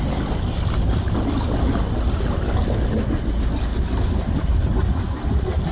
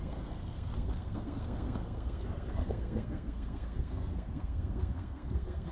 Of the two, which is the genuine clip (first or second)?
first